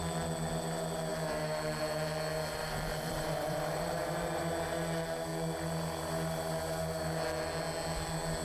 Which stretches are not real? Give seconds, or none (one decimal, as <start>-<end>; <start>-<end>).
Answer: 2.6-4.4